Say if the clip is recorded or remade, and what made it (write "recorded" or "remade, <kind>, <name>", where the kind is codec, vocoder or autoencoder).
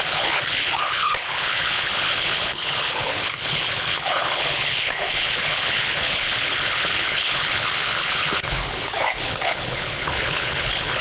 remade, codec, HILCodec